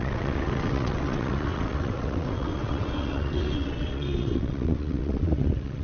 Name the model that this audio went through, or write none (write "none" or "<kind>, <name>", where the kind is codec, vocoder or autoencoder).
vocoder, WaveNeXt